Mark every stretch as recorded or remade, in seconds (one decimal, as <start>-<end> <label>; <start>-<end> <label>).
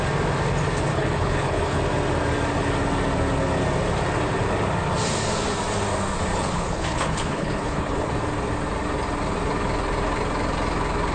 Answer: 0.0-0.9 recorded; 0.9-1.8 remade; 1.8-6.3 recorded; 6.3-8.1 remade; 8.1-11.1 recorded